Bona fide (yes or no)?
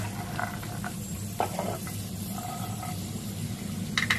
yes